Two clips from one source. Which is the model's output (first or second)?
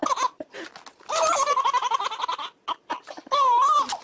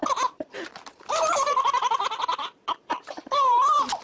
second